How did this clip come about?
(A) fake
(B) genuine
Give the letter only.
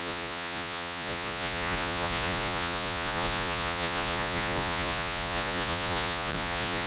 A